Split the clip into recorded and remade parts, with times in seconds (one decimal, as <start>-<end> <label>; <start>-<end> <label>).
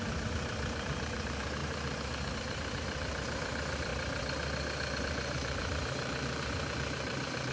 0.0-3.9 remade; 3.9-5.0 recorded; 5.0-7.5 remade